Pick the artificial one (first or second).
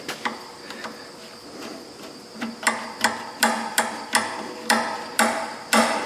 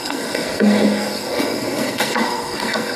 second